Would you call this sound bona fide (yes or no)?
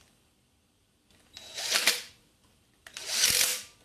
no